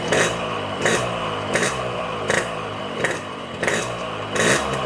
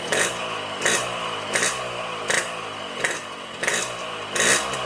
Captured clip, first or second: second